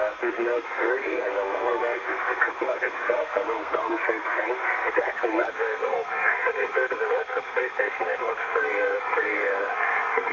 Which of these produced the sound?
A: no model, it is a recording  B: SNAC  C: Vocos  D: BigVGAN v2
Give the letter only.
B